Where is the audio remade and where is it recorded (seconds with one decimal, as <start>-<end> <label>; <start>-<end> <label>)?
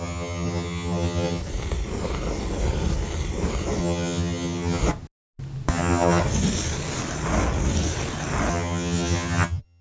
0.0-1.4 remade; 1.4-3.8 recorded; 3.8-4.8 remade; 4.8-5.7 recorded; 5.7-6.2 remade; 6.2-8.5 recorded; 8.5-9.8 remade